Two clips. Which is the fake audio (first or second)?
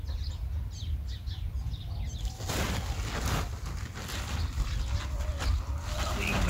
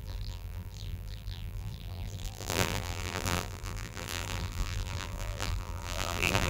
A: second